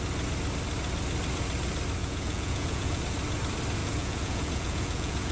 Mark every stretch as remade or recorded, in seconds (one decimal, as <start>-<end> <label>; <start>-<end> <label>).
0.0-2.0 recorded; 2.0-3.0 remade; 3.0-3.8 recorded; 3.8-5.3 remade